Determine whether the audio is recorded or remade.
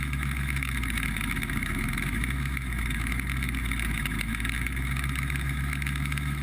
remade